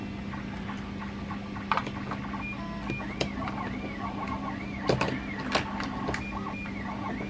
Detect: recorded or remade recorded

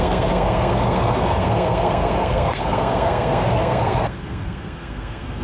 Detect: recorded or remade remade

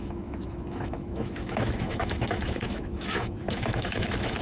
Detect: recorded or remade remade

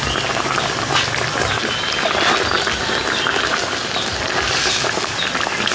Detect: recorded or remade recorded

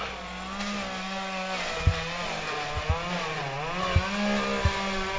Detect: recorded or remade recorded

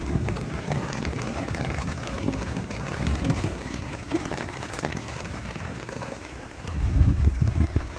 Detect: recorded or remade remade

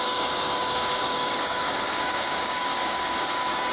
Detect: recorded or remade remade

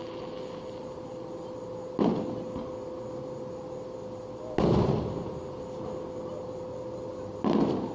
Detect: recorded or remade recorded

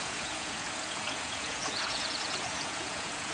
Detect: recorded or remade remade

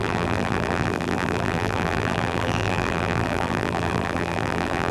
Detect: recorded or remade remade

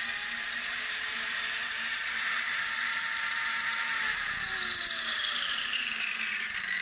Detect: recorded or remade remade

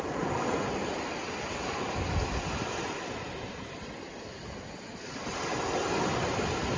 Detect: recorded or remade recorded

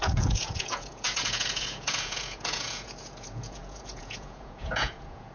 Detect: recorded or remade remade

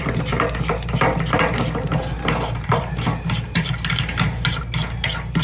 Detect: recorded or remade recorded